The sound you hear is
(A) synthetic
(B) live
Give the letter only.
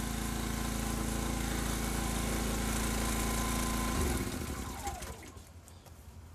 B